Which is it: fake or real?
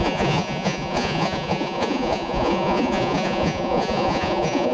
fake